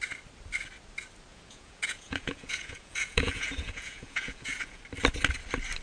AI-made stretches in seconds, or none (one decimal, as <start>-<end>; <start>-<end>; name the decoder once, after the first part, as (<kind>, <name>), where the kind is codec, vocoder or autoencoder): 1.3-4.8 (vocoder, Vocos)